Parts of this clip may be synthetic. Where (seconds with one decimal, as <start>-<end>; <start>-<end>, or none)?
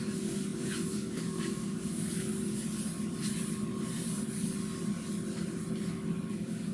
0.0-2.3; 6.3-6.7